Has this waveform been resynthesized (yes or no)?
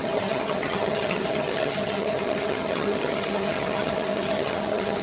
yes